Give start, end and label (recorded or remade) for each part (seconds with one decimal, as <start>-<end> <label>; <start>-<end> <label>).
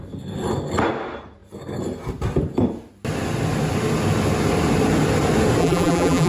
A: 0.0-5.6 recorded; 5.6-6.3 remade